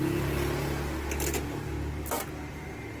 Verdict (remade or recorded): recorded